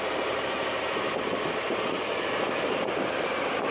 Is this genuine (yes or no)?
no